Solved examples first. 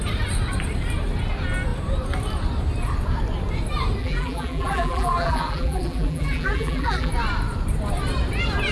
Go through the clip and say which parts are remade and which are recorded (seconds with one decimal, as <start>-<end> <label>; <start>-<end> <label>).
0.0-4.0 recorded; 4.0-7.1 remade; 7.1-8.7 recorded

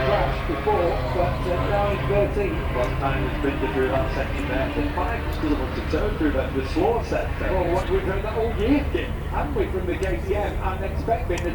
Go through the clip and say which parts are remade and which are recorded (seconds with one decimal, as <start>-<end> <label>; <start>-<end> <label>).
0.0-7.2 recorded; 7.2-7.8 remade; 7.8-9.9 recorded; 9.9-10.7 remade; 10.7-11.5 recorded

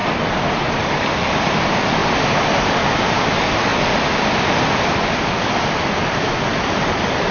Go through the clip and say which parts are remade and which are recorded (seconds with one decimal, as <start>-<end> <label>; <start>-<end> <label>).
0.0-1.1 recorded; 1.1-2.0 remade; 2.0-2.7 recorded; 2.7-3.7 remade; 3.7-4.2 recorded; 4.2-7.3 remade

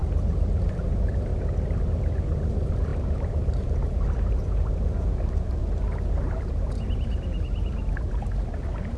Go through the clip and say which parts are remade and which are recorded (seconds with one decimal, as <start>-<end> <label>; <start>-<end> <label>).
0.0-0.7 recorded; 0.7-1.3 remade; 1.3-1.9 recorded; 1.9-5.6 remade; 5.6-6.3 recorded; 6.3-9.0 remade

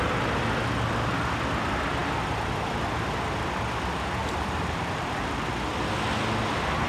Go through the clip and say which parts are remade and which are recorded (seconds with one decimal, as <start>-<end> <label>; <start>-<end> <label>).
0.0-4.2 recorded; 4.2-5.7 remade; 5.7-6.9 recorded

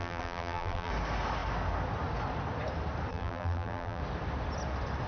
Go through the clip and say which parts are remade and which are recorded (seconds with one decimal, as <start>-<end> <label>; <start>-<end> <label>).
0.0-0.9 remade; 0.9-3.1 recorded; 3.1-4.0 remade; 4.0-5.1 recorded

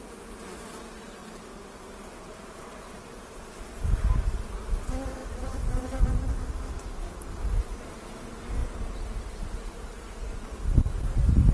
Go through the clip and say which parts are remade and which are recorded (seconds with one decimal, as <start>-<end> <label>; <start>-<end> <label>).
0.0-1.2 recorded; 1.2-4.4 remade; 4.4-5.2 recorded; 5.2-6.3 remade; 6.3-11.5 recorded